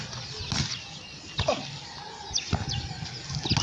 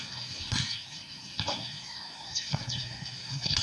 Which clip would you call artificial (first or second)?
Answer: second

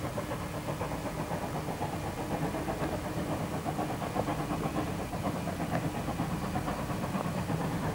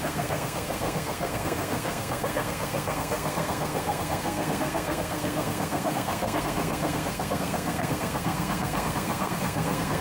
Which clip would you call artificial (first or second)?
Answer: second